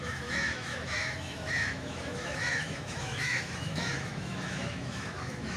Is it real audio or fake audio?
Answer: fake